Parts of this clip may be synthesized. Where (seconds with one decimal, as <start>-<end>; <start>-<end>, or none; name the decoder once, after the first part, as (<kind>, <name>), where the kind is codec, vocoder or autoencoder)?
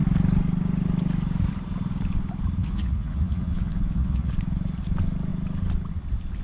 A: 2.6-4.3 (vocoder, Vocos)